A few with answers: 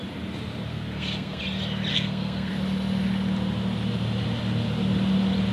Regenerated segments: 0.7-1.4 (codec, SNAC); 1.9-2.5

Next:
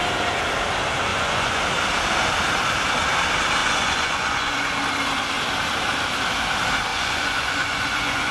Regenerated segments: 1.1-1.6 (vocoder, Vocos); 3.6-4.7; 6.9-8.3